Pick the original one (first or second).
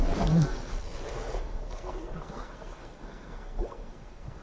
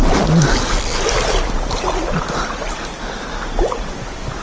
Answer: second